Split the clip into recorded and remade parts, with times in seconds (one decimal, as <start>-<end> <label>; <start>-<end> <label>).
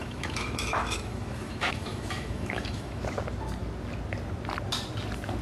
0.0-3.0 remade; 3.0-5.4 recorded